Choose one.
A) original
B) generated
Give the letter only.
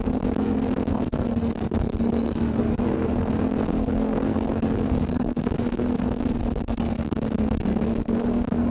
B